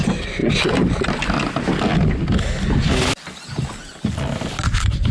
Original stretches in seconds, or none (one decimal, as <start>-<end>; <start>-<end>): 0.0-5.1